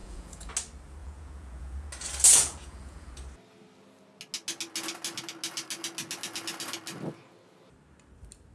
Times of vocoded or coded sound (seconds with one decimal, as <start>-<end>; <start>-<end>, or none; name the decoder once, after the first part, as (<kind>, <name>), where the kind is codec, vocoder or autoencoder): 0.0-0.5 (vocoder, Vocos); 1.0-1.9; 2.3-3.1